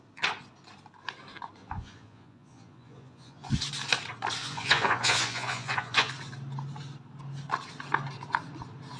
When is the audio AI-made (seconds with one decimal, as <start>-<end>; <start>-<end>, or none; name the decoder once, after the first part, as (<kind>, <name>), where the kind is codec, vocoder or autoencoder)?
1.6-3.5 (vocoder, Vocos); 4.4-6.1